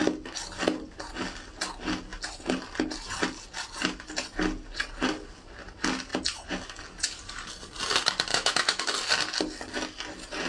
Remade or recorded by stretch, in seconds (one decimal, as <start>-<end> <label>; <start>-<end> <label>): 0.0-8.3 recorded; 8.3-8.8 remade; 8.8-10.5 recorded